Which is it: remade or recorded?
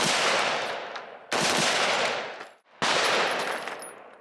recorded